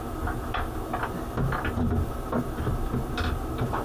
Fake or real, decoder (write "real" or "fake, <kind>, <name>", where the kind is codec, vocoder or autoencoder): real